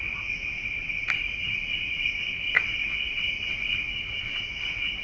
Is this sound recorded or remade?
remade